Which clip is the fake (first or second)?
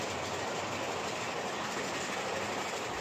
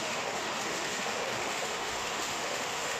second